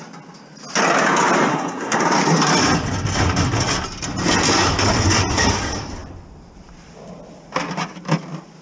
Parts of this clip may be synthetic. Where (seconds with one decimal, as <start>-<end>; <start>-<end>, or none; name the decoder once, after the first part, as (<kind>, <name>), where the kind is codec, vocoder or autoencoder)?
1.5-2.0 (codec, SNAC)